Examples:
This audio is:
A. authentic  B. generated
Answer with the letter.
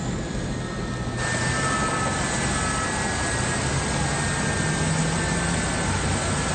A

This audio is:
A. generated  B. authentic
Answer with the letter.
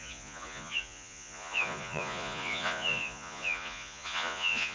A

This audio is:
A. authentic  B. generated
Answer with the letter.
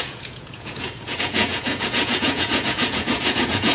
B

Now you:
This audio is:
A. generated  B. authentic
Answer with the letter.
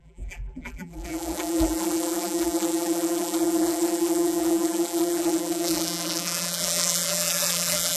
A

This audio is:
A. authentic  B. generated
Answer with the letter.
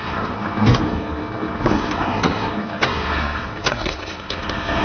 B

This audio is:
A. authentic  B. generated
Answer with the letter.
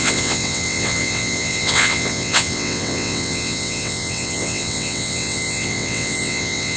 B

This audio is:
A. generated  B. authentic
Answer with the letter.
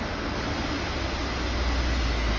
B